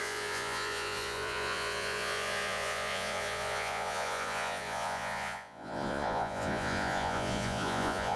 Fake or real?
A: fake